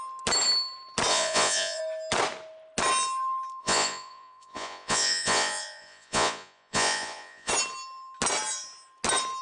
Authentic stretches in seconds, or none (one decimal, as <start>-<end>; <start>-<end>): 0.0-1.1; 1.8-3.6; 7.5-9.4